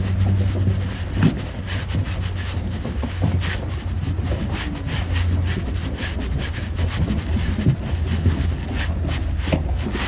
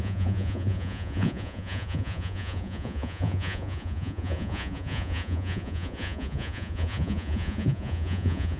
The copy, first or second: second